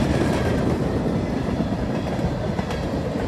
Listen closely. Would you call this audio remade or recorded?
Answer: recorded